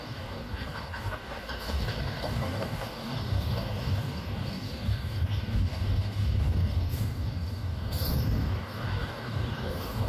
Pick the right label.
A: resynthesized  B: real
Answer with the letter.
A